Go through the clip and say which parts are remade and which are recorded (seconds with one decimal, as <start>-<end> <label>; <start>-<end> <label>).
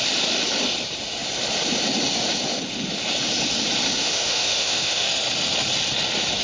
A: 0.0-4.0 recorded; 4.0-5.1 remade; 5.1-6.4 recorded